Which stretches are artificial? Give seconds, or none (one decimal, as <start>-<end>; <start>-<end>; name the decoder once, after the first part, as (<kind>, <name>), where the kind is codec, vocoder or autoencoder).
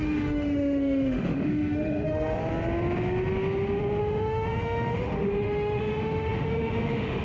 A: 0.0-2.4 (autoencoder, DAC-VAE); 4.0-7.2